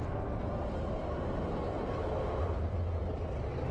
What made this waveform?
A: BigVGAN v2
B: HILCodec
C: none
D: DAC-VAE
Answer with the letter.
C